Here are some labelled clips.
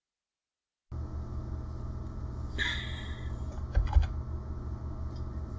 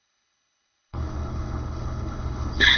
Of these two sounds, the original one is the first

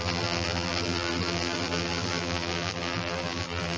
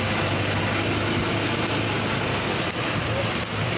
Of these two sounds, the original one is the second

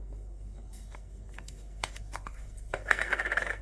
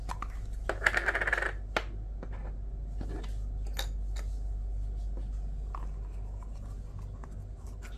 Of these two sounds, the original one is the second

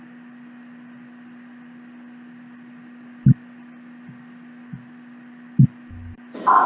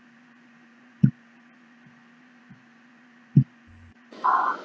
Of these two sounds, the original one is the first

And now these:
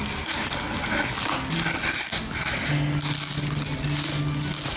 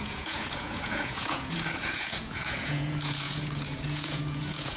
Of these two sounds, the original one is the first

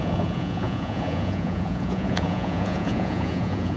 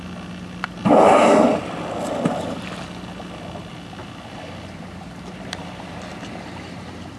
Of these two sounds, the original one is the second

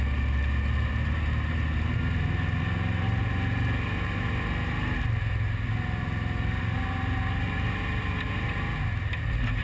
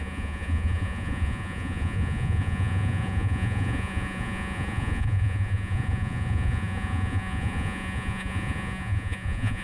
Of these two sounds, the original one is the first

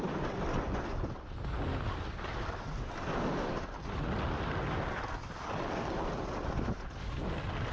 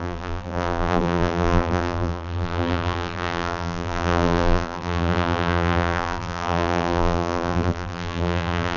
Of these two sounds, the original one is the first